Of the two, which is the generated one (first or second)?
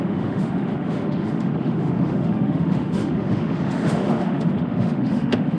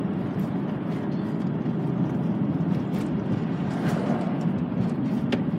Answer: first